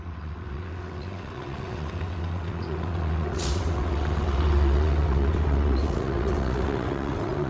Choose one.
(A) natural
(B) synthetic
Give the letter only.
B